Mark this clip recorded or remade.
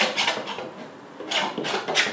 recorded